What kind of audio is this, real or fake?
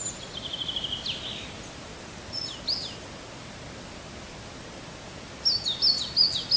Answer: real